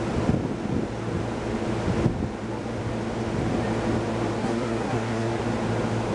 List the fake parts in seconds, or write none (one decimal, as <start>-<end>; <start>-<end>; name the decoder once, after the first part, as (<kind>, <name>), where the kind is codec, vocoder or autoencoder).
4.4-5.4 (codec, SNAC)